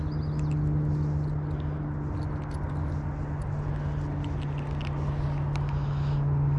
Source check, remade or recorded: recorded